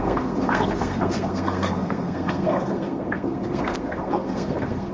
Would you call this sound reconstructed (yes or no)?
yes